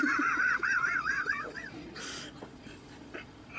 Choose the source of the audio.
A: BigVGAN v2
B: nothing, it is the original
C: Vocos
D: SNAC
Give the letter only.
C